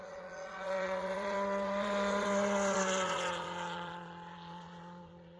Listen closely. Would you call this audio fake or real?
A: fake